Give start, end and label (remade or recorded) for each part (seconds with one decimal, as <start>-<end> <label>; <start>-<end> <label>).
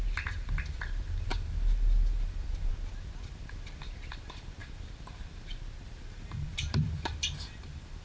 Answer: 0.0-1.3 remade; 1.3-2.7 recorded; 2.7-8.0 remade